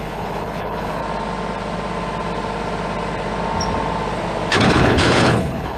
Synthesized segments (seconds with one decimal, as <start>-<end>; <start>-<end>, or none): 0.0-1.0; 4.5-5.8